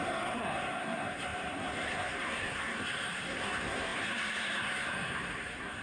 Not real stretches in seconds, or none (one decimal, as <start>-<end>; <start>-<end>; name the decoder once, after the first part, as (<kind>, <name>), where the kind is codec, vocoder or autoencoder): 0.0-5.8 (codec, SNAC)